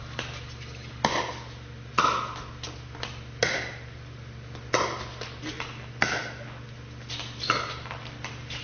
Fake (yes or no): no